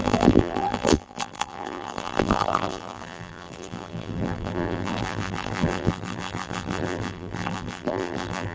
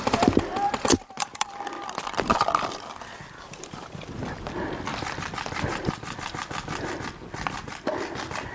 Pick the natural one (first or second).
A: second